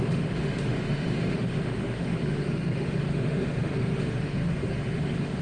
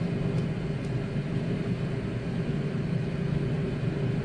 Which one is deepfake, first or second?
first